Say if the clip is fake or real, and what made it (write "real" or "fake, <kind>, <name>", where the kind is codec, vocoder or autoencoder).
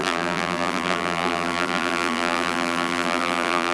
fake, vocoder, BigVGAN v2